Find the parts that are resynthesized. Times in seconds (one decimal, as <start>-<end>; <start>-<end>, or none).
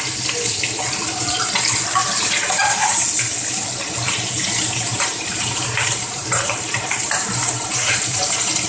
4.9-8.2